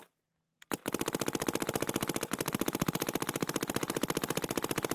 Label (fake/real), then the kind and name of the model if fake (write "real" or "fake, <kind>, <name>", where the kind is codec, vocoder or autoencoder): real